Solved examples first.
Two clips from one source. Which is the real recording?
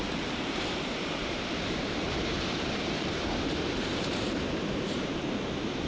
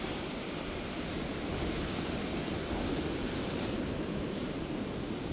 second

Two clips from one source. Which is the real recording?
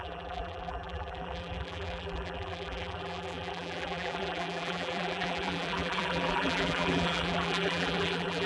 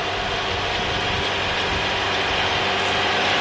second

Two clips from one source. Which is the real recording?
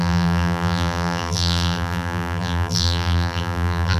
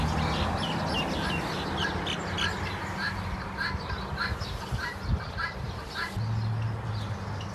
second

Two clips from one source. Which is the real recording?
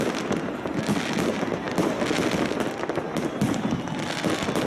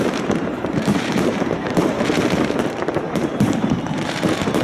first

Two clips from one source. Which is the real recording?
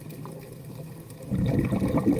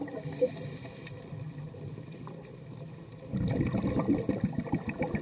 first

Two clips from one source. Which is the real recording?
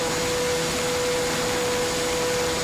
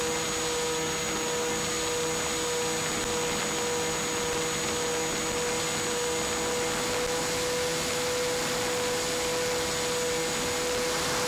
second